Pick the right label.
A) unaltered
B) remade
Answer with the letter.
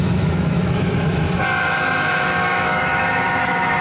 B